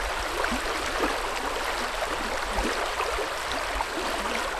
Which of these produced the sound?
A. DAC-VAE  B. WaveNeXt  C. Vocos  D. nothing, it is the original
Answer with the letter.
D